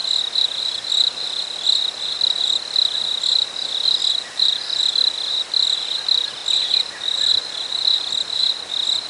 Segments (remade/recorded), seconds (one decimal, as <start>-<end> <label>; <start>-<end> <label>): 0.0-9.1 recorded